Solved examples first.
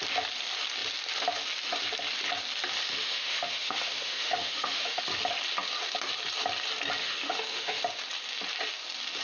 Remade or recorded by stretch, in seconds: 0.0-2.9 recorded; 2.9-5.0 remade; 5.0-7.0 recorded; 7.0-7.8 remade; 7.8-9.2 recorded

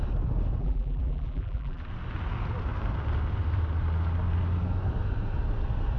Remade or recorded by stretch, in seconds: 0.0-0.6 recorded; 0.6-1.8 remade; 1.8-6.0 recorded

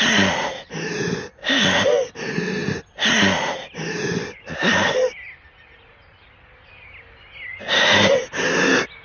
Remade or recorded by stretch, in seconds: 0.0-9.0 recorded

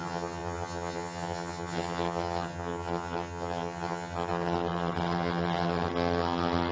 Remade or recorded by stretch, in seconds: 0.0-6.7 remade

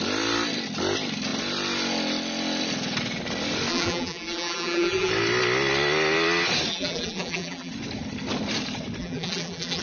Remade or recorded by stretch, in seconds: 0.0-3.7 recorded; 3.7-5.1 remade; 5.1-6.7 recorded; 6.7-7.7 remade; 7.7-9.0 recorded; 9.0-9.8 remade